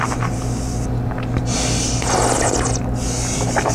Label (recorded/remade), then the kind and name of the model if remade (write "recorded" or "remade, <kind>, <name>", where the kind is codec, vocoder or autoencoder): recorded